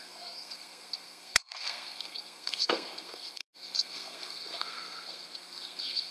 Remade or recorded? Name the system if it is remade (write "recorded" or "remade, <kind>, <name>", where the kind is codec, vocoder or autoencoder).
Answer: remade, codec, SNAC